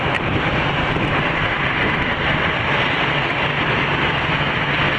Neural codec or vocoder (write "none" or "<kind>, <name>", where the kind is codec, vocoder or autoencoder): none